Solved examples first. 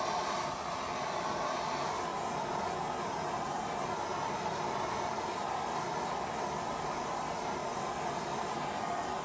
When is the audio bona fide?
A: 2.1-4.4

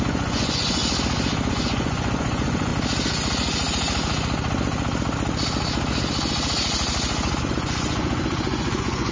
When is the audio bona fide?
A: 0.8-1.5; 2.7-7.4

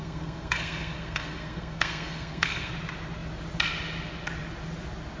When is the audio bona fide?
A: 2.7-5.2